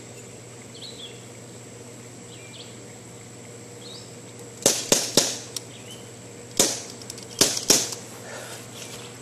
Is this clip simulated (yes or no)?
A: no